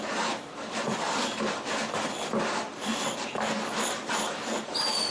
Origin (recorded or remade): recorded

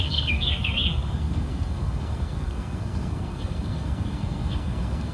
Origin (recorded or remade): remade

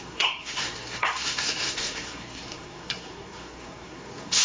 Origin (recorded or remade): remade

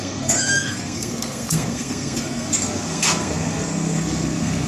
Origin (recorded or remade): remade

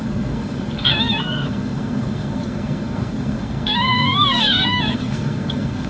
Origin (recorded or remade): remade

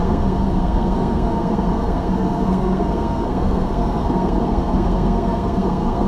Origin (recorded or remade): remade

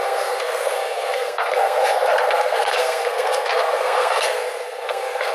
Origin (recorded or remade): remade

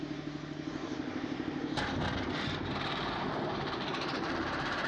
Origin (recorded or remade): remade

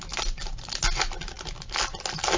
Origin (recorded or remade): recorded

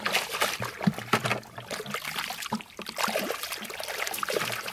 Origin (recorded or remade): recorded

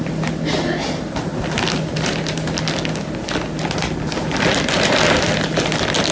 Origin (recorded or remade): recorded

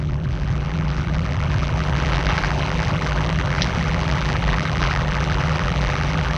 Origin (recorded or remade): remade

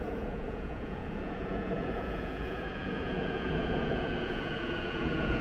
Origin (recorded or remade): remade